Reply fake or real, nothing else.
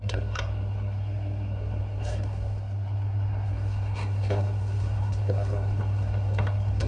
fake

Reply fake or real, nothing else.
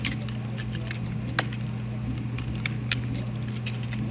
real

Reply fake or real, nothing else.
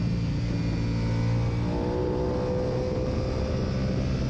real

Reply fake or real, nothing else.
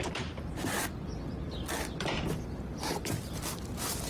real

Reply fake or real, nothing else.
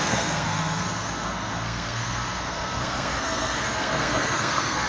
fake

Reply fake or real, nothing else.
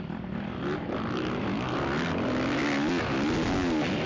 real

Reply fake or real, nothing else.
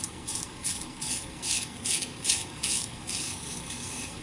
fake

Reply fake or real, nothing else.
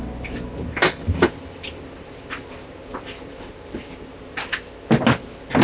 real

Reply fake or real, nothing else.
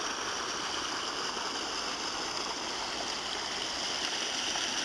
real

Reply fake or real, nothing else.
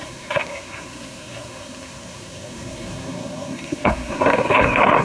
fake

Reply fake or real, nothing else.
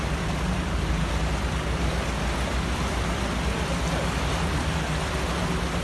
real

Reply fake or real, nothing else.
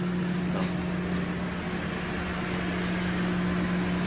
real